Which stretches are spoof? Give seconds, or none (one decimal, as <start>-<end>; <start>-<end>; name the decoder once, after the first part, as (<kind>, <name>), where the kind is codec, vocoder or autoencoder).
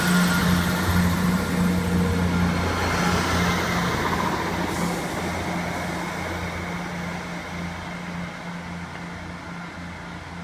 0.4-1.5 (vocoder, BigVGAN v2)